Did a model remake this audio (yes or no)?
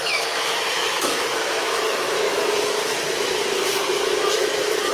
yes